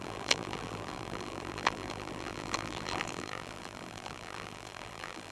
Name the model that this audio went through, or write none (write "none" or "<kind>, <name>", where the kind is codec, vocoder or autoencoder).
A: vocoder, BigVGAN v2